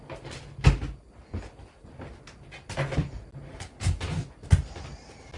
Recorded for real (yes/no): yes